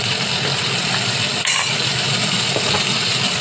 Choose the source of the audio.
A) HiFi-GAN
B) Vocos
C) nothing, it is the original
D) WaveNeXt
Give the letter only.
C